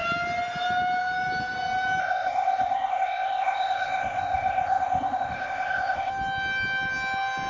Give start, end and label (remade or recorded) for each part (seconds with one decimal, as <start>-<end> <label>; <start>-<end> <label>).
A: 0.0-2.0 recorded; 2.0-6.1 remade; 6.1-7.5 recorded